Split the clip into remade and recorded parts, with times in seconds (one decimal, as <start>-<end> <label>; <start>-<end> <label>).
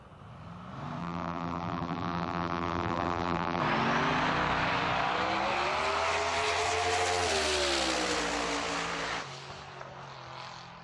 0.0-1.0 recorded; 1.0-3.6 remade; 3.6-10.8 recorded